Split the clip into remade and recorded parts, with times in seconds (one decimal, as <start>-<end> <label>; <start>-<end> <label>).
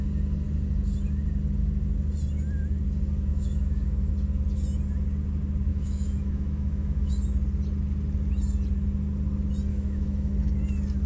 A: 0.0-3.3 recorded; 3.3-4.1 remade; 4.1-5.7 recorded; 5.7-7.1 remade; 7.1-9.7 recorded; 9.7-10.3 remade; 10.3-11.1 recorded